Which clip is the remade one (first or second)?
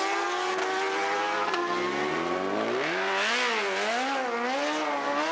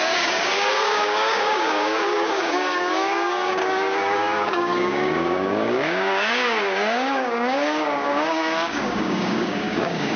second